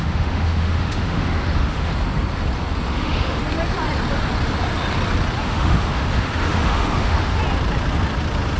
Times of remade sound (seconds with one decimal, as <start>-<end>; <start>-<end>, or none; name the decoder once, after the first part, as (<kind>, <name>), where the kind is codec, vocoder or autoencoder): 0.0-1.9 (autoencoder, DAC-VAE); 2.9-3.4; 5.4-7.4